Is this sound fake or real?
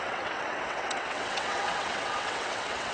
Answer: fake